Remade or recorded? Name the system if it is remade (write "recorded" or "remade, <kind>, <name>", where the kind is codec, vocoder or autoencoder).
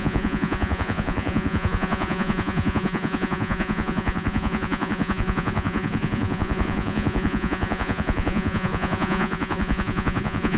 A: remade, vocoder, Vocos